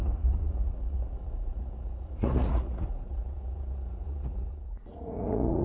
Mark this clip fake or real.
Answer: fake